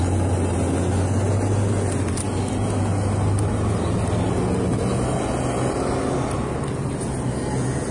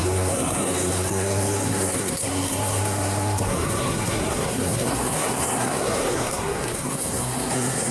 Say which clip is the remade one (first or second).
second